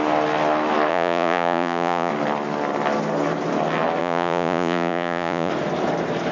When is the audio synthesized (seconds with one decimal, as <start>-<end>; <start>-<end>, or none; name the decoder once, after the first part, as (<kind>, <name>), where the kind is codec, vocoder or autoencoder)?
0.9-2.1 (vocoder, Vocos); 4.0-5.5